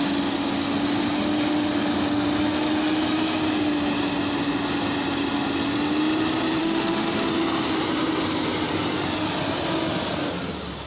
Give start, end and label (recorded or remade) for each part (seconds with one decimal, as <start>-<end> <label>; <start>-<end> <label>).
0.0-6.6 recorded; 6.6-7.3 remade; 7.3-10.9 recorded

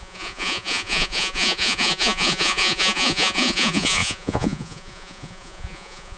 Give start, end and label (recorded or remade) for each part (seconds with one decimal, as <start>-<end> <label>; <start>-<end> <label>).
0.0-6.2 remade

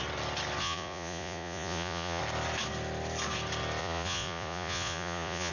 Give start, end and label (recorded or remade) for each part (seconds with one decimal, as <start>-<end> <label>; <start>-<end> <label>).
0.0-0.6 recorded; 0.6-2.2 remade; 2.2-3.8 recorded; 3.8-5.5 remade

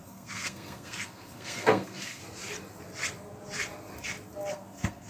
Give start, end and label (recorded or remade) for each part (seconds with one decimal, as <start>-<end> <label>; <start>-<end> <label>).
0.0-2.2 remade; 2.2-4.5 recorded; 4.5-5.1 remade

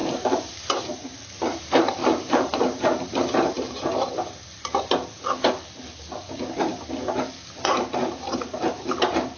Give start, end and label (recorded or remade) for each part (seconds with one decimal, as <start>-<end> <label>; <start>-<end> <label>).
0.0-1.2 remade; 1.2-2.0 recorded; 2.0-3.3 remade; 3.3-9.4 recorded

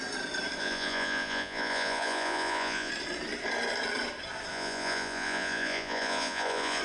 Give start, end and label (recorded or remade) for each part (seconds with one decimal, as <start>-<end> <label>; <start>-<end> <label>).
0.0-0.6 recorded; 0.6-2.9 remade; 2.9-4.5 recorded; 4.5-6.8 remade

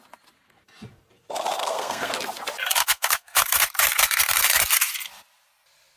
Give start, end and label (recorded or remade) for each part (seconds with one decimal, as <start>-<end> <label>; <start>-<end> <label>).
0.0-1.6 recorded; 1.6-2.1 remade; 2.1-2.8 recorded; 2.8-3.4 remade; 3.4-6.0 recorded

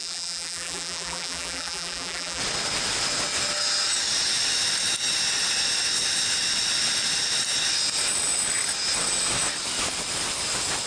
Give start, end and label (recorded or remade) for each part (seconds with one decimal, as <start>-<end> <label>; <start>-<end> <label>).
0.0-2.4 remade; 2.4-10.9 recorded